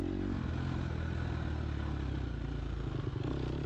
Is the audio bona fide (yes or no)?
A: yes